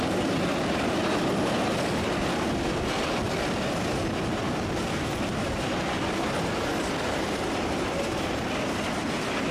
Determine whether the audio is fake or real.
fake